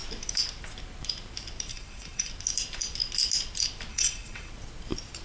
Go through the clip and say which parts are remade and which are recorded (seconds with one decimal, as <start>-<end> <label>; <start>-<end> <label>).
0.0-1.7 recorded; 1.7-2.3 remade; 2.3-3.9 recorded; 3.9-4.5 remade; 4.5-5.2 recorded